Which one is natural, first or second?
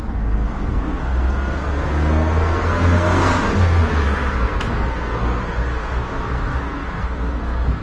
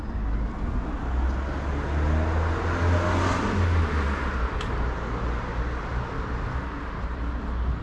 second